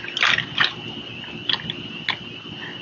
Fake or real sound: real